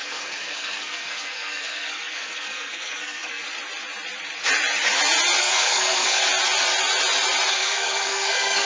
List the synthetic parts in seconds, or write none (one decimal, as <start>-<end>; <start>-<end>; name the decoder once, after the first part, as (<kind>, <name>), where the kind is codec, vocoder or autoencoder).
0.0-3.4 (codec, SNAC); 5.4-6.2; 7.5-8.6